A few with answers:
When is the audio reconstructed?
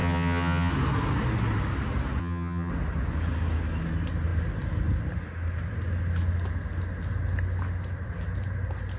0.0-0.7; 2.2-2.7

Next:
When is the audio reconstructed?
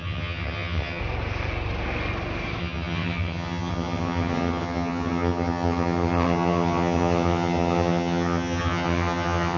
0.0-1.0; 2.6-9.6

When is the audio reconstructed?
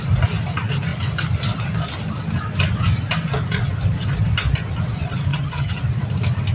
5.3-5.8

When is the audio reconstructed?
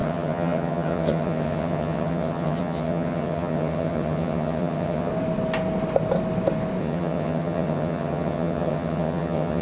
0.0-5.1; 6.8-9.6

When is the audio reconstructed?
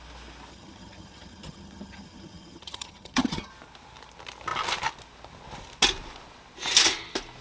0.5-3.5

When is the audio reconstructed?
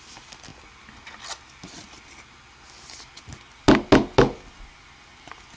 none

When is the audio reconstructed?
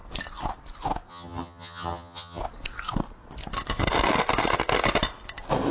1.1-2.4